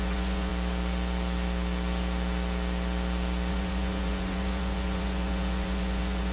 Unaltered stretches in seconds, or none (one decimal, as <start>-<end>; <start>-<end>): 0.5-3.5